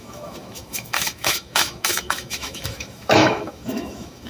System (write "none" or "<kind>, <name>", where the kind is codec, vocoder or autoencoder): autoencoder, DAC-VAE